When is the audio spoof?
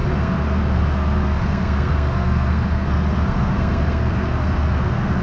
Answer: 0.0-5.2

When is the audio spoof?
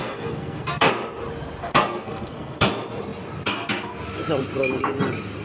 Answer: 0.0-0.9; 1.6-2.7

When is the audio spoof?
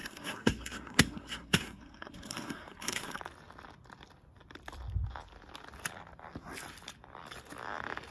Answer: 0.0-3.2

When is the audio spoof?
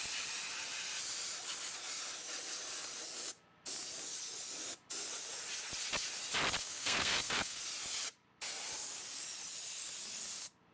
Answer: 6.6-7.6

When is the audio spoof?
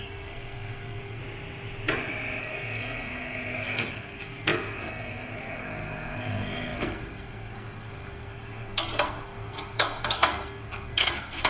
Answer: 0.0-1.2; 2.4-11.5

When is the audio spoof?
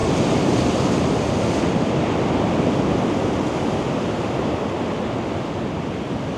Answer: none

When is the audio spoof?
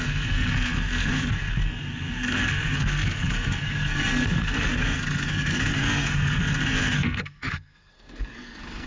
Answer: 0.0-8.9